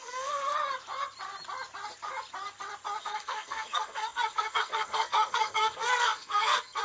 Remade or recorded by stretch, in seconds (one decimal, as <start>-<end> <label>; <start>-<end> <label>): 0.0-0.5 remade; 0.5-3.0 recorded; 3.0-6.8 remade